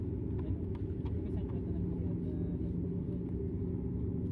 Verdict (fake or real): real